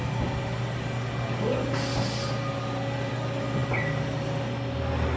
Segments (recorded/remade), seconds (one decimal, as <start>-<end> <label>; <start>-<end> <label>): 0.0-5.2 recorded